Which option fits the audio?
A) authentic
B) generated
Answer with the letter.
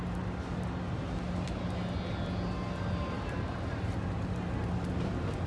A